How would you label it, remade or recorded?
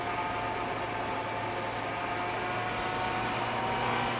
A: recorded